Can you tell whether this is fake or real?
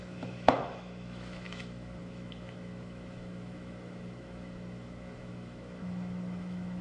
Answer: fake